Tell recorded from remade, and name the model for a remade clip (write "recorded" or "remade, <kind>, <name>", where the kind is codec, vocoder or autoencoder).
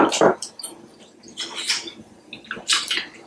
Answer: recorded